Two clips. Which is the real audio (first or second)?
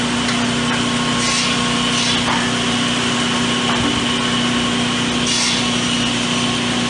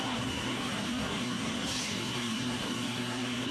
first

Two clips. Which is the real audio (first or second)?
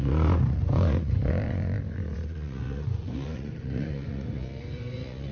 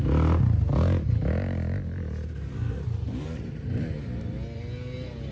second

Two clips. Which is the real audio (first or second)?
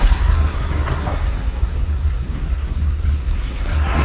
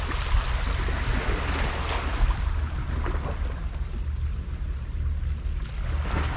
second